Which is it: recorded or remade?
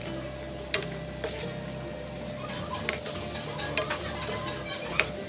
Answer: recorded